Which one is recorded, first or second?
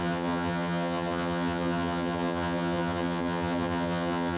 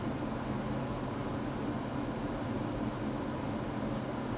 second